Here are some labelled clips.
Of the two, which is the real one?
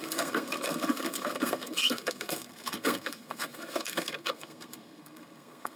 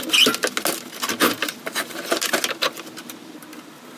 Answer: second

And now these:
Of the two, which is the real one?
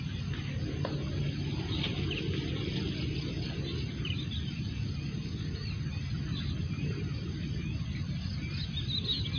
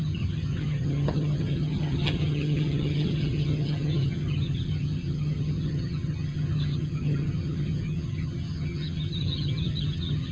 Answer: first